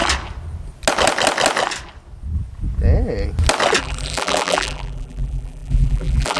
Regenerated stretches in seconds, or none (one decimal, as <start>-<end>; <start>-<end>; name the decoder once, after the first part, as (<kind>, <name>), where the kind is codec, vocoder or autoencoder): 3.8-6.4 (vocoder, BigVGAN v2)